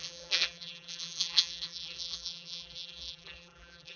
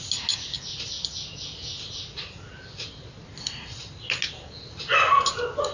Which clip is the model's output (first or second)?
first